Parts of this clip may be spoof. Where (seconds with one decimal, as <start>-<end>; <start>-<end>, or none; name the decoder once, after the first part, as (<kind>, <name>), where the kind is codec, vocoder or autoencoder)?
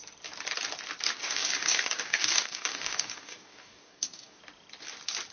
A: 1.2-4.4 (codec, DAC)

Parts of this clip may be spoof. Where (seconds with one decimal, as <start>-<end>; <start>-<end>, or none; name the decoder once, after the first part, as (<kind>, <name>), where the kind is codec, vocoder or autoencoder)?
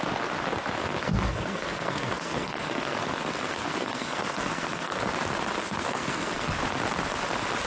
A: 0.8-5.0 (codec, SNAC); 5.6-6.5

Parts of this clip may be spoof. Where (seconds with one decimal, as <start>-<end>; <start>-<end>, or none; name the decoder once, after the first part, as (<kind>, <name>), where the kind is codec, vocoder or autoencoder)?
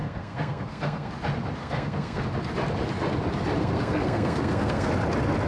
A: 0.0-1.1 (codec, SNAC); 1.6-2.2; 3.6-4.9